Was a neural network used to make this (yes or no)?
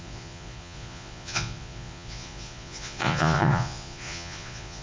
yes